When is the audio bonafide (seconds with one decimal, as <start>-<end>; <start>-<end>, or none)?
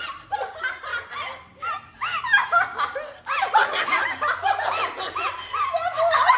0.0-6.4